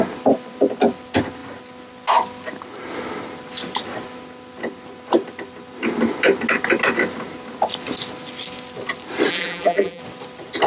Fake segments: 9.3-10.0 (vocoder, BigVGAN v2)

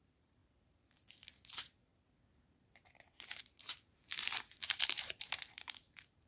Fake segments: 0.0-6.3 (vocoder, BigVGAN v2)

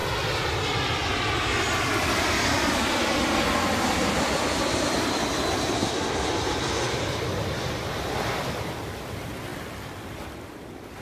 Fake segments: 5.8-6.4 (vocoder, BigVGAN v2)

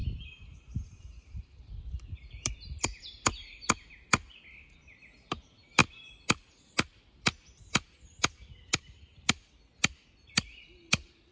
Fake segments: 0.0-2.5 (vocoder, BigVGAN v2)

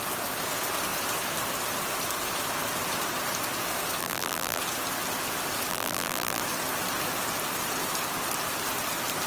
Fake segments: 4.0-4.6 (vocoder, BigVGAN v2); 5.7-6.4

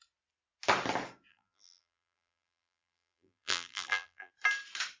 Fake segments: 1.3-4.3 (vocoder, BigVGAN v2)

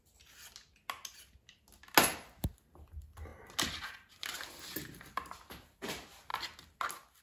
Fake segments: none

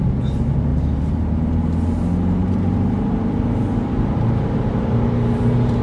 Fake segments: 0.7-1.6 (vocoder, BigVGAN v2); 2.4-5.8